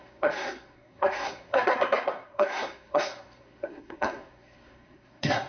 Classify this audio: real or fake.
fake